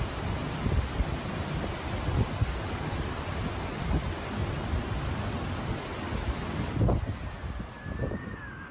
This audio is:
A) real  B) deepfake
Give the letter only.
A